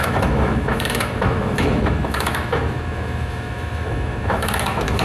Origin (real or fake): fake